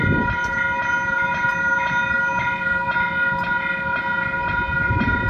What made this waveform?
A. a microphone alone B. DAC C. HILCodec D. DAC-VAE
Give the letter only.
A